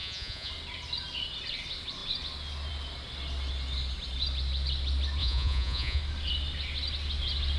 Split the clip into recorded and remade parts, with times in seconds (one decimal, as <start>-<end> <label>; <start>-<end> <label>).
0.0-0.5 remade; 0.5-5.2 recorded; 5.2-6.0 remade; 6.0-7.6 recorded